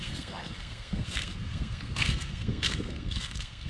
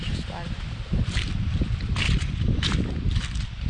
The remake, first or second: first